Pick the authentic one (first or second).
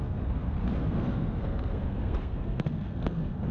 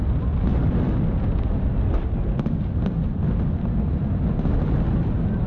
second